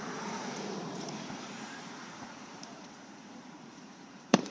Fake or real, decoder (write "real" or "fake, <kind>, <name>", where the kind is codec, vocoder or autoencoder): fake, vocoder, Vocos